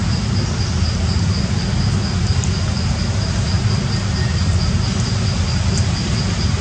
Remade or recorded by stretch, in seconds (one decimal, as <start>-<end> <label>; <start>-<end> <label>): 0.0-6.6 recorded